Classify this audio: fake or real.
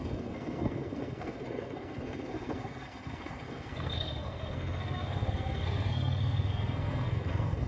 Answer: fake